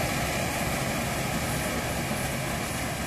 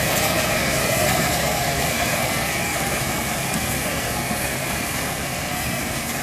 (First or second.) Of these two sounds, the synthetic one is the second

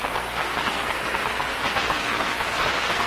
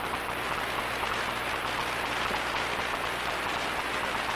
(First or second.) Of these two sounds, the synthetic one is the first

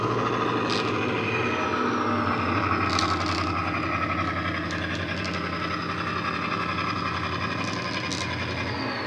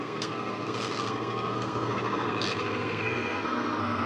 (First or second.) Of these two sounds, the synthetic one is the second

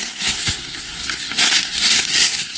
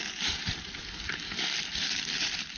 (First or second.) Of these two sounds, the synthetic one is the first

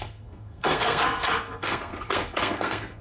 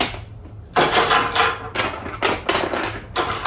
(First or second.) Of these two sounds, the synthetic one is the first